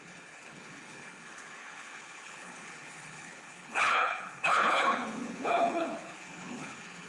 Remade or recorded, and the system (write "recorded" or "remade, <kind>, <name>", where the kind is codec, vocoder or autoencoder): remade, codec, HILCodec